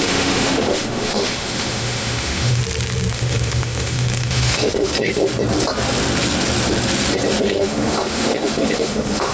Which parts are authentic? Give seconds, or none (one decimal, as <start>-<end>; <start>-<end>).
2.6-3.1; 4.9-7.4